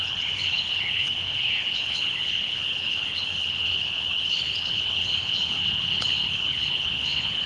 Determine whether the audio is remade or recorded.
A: remade